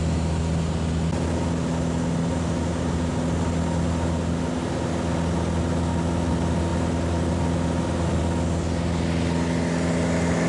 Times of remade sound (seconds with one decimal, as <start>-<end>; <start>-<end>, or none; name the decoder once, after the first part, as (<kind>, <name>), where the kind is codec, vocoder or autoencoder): none